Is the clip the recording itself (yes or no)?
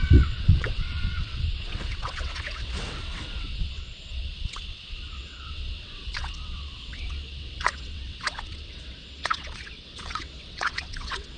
no